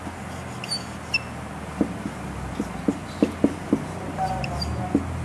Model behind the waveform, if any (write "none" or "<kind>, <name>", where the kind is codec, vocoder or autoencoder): none